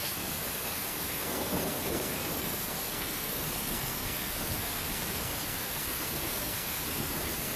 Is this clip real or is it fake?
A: fake